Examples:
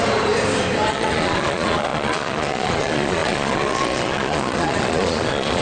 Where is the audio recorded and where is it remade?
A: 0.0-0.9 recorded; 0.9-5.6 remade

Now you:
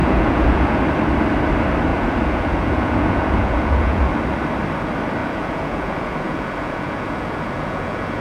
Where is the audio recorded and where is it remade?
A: 0.0-0.8 remade; 0.8-1.9 recorded; 1.9-4.1 remade; 4.1-5.2 recorded; 5.2-8.2 remade

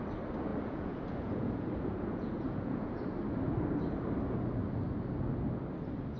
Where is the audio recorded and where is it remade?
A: 0.0-0.5 recorded; 0.5-2.8 remade; 2.8-6.2 recorded

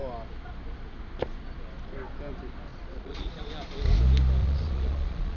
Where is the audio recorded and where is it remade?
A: 0.0-2.7 recorded; 2.7-3.5 remade; 3.5-4.4 recorded; 4.4-5.4 remade

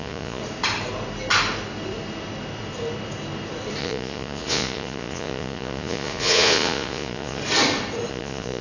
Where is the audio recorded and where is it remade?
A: 0.0-0.4 remade; 0.4-3.8 recorded; 3.8-7.4 remade; 7.4-8.1 recorded; 8.1-8.6 remade

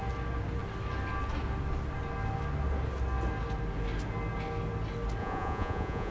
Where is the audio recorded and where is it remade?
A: 0.0-5.2 recorded; 5.2-6.1 remade

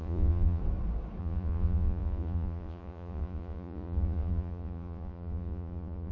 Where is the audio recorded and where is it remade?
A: 0.0-0.6 remade; 0.6-1.2 recorded; 1.2-6.1 remade

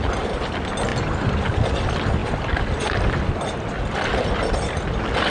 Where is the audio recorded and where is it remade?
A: 0.0-5.3 recorded